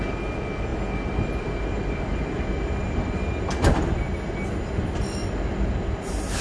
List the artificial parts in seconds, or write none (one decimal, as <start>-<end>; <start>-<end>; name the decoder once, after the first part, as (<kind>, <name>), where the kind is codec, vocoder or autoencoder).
none